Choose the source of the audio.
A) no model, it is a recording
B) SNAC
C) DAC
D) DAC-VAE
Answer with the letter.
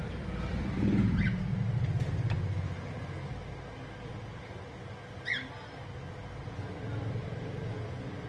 A